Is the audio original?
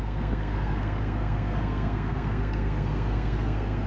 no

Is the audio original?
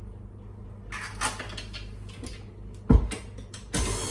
yes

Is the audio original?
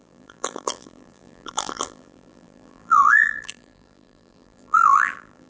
no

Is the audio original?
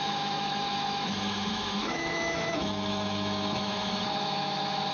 no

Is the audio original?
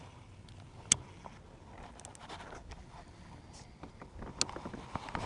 yes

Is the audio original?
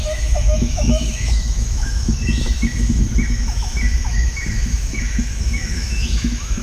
no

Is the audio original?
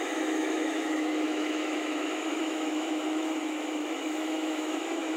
no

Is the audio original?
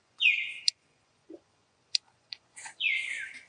no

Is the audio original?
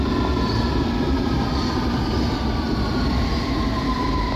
yes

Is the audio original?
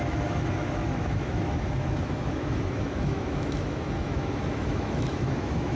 no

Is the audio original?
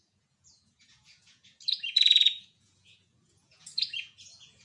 no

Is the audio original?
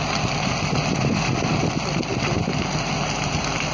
yes